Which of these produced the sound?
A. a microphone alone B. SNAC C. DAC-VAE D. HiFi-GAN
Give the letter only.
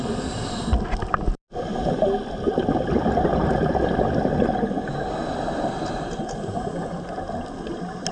A